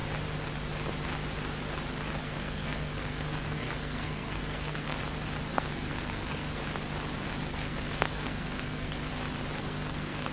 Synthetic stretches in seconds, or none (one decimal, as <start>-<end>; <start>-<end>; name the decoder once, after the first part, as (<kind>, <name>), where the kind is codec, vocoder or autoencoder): 2.2-4.9 (codec, SNAC); 5.5-6.6; 7.5-9.1; 9.6-10.3